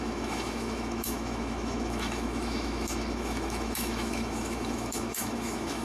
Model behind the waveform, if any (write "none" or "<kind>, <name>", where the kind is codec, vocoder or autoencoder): autoencoder, DAC-VAE